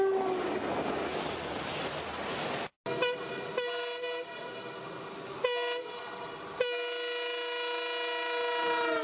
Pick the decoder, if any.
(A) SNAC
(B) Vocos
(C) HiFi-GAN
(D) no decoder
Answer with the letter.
D